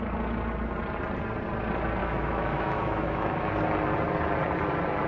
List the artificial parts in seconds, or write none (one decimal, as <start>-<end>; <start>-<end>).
2.0-3.5